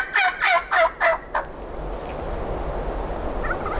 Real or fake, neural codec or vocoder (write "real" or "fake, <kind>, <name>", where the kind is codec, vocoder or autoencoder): real